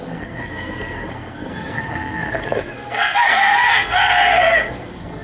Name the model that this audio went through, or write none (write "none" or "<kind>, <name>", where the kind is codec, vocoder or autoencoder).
codec, SNAC